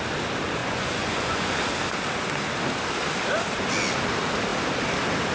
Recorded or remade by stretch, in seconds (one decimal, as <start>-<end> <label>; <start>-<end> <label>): 0.0-0.6 recorded; 0.6-1.5 remade; 1.5-5.3 recorded